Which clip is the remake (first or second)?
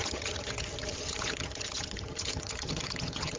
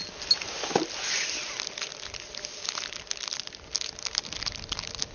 first